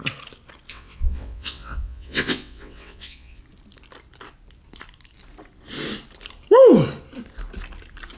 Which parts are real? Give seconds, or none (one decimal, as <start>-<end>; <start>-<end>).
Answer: 0.0-0.7; 3.4-8.2